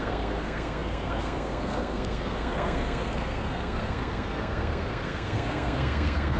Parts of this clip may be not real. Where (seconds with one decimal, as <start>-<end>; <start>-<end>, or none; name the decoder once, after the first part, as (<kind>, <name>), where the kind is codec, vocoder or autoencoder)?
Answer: 0.0-6.4 (codec, SNAC)